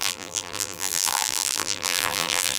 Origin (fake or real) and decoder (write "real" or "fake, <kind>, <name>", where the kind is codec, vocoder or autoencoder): fake, vocoder, BigVGAN v2